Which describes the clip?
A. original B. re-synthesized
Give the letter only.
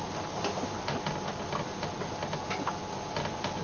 A